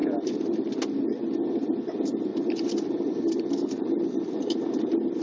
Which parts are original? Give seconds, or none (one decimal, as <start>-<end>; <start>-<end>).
0.7-2.3; 4.6-5.2